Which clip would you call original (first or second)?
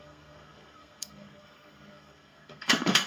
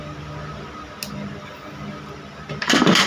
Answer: second